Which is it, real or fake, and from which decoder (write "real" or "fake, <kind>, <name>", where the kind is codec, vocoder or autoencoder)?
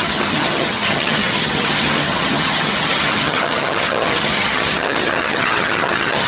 fake, vocoder, HiFi-GAN